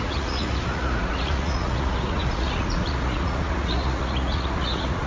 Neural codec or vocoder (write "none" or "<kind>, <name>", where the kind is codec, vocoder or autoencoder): vocoder, Vocos